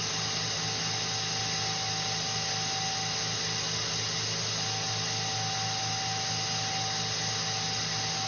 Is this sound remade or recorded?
recorded